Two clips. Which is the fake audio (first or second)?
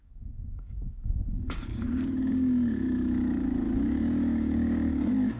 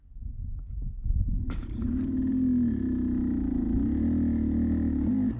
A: first